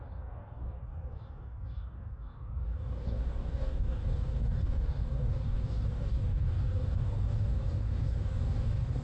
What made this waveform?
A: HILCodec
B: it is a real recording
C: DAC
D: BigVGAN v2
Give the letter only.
C